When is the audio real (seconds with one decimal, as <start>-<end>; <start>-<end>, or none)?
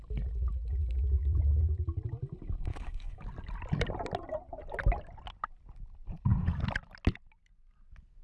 0.0-0.8; 1.4-2.7; 3.3-8.2